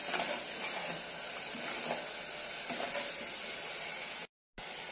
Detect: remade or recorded recorded